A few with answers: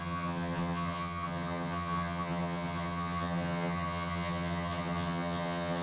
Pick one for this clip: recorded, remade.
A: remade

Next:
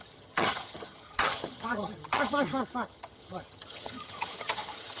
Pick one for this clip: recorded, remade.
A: remade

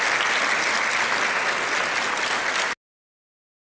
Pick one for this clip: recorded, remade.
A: recorded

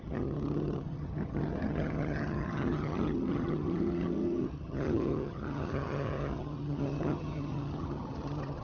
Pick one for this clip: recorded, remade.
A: remade